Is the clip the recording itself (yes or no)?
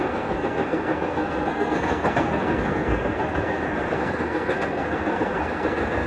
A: no